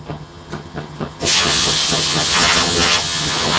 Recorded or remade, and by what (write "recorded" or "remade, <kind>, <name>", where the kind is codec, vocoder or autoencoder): remade, vocoder, HiFi-GAN